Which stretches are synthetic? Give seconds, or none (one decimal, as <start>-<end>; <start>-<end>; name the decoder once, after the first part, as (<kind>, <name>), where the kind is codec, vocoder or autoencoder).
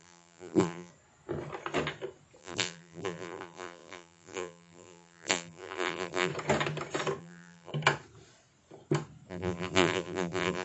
0.0-0.9 (vocoder, BigVGAN v2); 2.4-6.3; 7.2-7.7; 9.3-10.6